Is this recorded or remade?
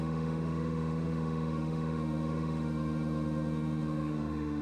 remade